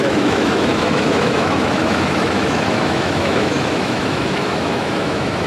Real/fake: fake